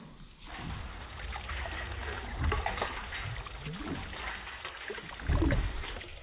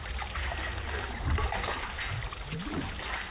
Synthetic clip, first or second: second